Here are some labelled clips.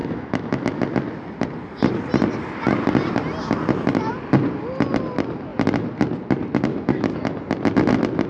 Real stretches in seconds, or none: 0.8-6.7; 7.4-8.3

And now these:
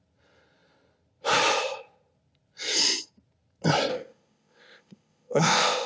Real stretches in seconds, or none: 0.0-3.9

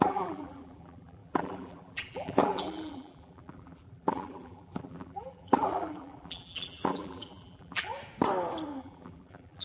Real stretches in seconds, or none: 7.9-8.8